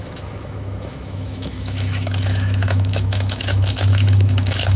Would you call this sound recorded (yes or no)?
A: no